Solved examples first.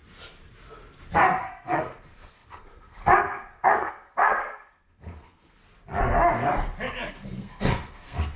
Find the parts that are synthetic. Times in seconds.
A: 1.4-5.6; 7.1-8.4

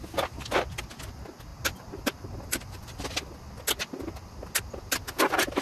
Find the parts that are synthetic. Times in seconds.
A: none